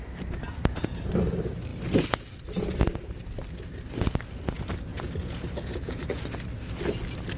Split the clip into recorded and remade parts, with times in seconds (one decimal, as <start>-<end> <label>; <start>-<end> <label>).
0.0-0.5 recorded; 0.5-1.1 remade; 1.1-4.9 recorded; 4.9-6.2 remade; 6.2-7.4 recorded